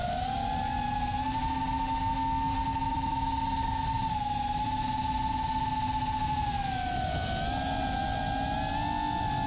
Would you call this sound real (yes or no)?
yes